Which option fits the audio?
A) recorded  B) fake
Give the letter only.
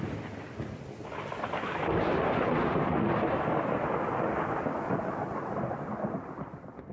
A